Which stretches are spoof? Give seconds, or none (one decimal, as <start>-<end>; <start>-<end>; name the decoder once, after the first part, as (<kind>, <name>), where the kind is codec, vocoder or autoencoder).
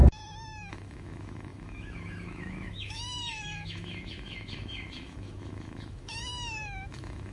0.0-7.3 (autoencoder, DAC-VAE)